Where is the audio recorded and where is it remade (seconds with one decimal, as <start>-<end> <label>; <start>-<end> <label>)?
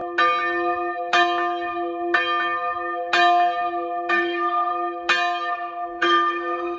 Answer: 0.0-4.1 recorded; 4.1-4.7 remade; 4.7-5.5 recorded; 5.5-6.8 remade